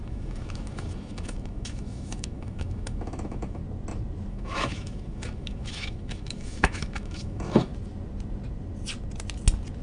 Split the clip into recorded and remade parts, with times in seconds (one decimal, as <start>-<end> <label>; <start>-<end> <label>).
0.0-3.6 remade; 3.6-4.3 recorded; 4.3-7.7 remade; 7.7-9.8 recorded